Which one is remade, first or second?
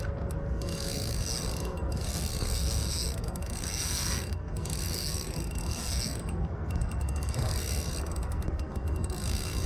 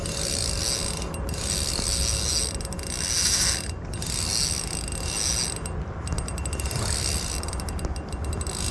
first